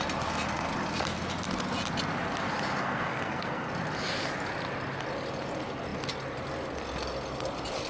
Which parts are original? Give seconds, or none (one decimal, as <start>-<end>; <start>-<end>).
0.0-2.8; 3.7-7.9